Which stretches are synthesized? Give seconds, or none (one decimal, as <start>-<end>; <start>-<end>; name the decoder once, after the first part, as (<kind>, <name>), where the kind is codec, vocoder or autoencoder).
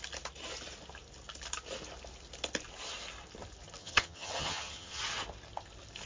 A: 3.8-5.0 (vocoder, HiFi-GAN)